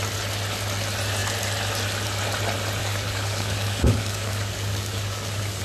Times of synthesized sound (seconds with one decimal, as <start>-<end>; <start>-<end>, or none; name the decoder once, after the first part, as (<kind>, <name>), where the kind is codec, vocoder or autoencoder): 2.8-5.6 (codec, DAC)

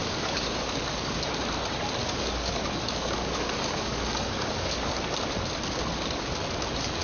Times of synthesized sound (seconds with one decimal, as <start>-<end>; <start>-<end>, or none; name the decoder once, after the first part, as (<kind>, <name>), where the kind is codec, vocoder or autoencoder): 0.0-1.3 (codec, DAC); 2.0-4.9

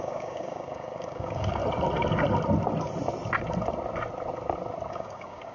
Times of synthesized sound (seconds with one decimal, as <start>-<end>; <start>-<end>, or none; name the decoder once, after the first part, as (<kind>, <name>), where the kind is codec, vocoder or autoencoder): 0.0-1.6 (codec, DAC); 4.9-5.5

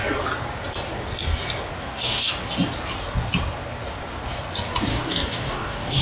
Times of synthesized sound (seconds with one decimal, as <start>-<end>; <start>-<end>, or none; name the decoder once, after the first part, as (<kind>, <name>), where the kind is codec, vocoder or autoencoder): 1.8-2.3 (codec, DAC); 4.9-6.0

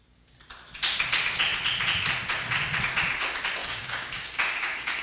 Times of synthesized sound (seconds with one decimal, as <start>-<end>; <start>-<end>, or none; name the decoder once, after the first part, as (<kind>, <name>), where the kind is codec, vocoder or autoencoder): 3.6-5.0 (codec, DAC)

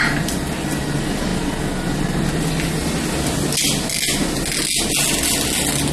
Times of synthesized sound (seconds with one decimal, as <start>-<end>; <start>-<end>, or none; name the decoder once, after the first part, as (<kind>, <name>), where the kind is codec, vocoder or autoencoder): none